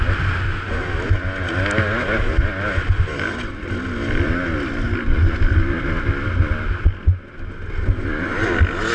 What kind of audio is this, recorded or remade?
recorded